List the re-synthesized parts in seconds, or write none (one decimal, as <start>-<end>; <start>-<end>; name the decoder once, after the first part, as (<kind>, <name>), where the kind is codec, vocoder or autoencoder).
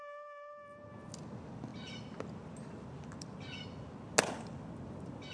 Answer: none